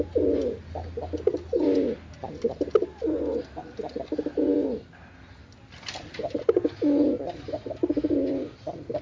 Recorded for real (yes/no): yes